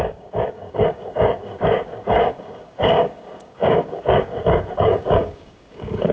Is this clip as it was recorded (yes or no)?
no